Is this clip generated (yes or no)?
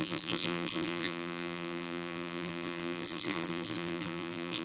yes